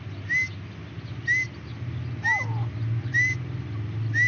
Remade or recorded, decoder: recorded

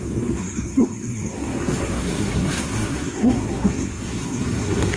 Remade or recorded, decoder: remade, codec, SNAC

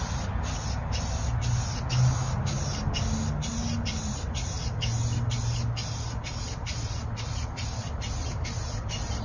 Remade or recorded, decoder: recorded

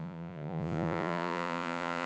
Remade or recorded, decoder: remade, vocoder, Vocos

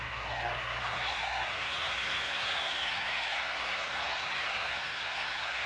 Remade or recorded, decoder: remade, codec, SNAC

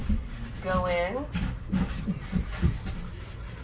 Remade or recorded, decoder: recorded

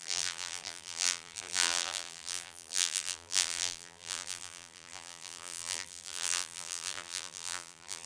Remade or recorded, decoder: remade, vocoder, BigVGAN v2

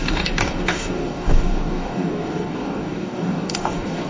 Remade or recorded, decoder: remade, codec, DAC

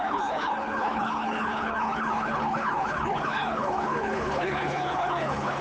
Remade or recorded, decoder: remade, codec, HILCodec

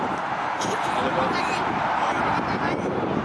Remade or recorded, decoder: recorded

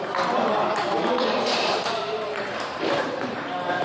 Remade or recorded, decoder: remade, vocoder, BigVGAN v2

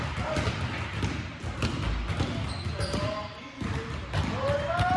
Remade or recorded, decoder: recorded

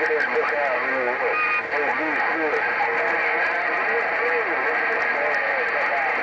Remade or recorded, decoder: recorded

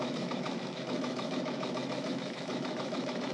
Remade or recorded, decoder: remade, autoencoder, DAC-VAE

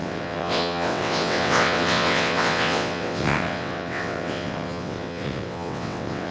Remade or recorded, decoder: remade, vocoder, WaveNeXt